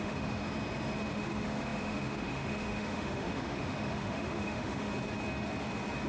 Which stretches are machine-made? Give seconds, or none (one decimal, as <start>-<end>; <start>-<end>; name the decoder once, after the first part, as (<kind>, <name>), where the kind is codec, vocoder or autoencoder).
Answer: 0.0-0.4 (autoencoder, DAC-VAE); 1.1-4.9